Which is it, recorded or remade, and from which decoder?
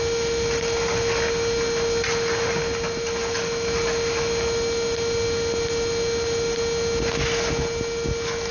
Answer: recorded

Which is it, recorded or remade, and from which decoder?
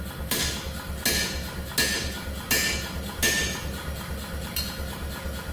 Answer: recorded